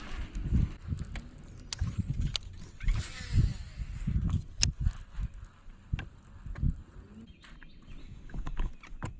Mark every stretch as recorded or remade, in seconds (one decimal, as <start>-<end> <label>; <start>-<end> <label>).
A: 0.0-8.0 recorded; 8.0-8.7 remade; 8.7-9.2 recorded